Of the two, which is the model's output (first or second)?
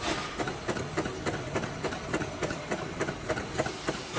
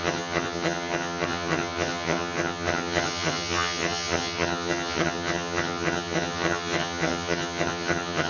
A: second